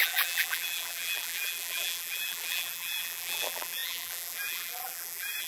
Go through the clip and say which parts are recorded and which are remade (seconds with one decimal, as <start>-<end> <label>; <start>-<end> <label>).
0.0-5.5 remade